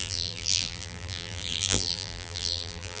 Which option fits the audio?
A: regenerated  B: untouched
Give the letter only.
A